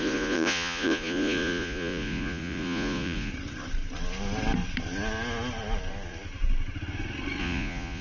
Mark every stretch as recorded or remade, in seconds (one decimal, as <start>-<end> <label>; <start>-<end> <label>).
0.0-3.3 remade; 3.3-7.4 recorded; 7.4-8.0 remade